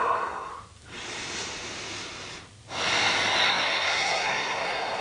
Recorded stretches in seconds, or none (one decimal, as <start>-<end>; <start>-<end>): 0.5-3.5